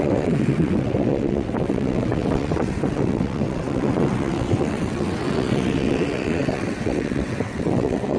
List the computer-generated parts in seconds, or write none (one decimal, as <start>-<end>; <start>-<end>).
0.0-8.2

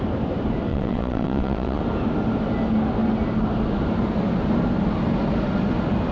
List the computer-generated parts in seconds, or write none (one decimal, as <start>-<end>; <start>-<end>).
0.7-1.8